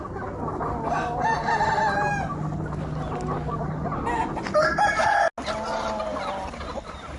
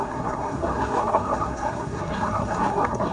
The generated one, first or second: second